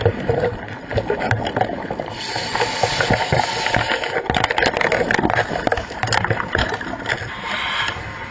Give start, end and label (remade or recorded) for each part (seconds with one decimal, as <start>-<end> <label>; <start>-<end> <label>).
0.0-8.3 recorded